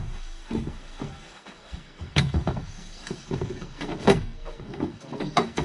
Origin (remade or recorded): remade